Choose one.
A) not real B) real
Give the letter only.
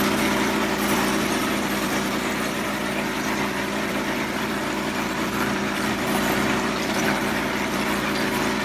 A